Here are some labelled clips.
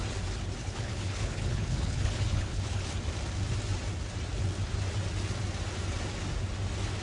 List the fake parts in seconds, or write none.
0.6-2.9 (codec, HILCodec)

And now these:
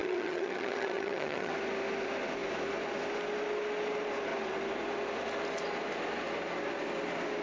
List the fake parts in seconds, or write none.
0.0-1.5 (vocoder, HiFi-GAN)